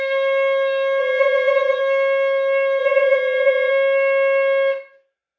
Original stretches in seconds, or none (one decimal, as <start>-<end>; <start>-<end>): 0.0-1.0; 1.8-2.8; 3.7-5.4